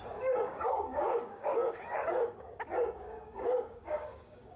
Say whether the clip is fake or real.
fake